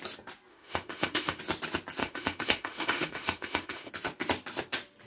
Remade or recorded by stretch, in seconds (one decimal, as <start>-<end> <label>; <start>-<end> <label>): 0.0-0.5 recorded; 0.5-1.4 remade; 1.4-2.0 recorded; 2.0-3.9 remade; 3.9-5.1 recorded